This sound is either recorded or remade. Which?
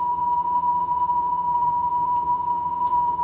remade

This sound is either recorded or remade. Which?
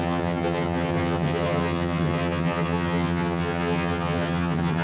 remade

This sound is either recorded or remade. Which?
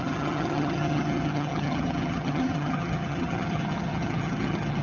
remade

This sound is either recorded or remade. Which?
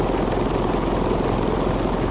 recorded